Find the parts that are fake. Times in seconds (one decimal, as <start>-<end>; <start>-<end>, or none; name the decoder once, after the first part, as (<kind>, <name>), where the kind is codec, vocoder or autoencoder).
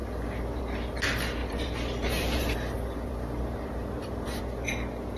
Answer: 1.4-4.4 (vocoder, BigVGAN v2)